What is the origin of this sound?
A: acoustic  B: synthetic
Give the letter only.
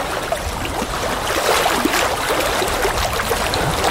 A